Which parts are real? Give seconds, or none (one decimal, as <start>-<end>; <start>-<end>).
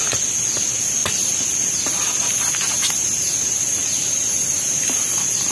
0.0-5.5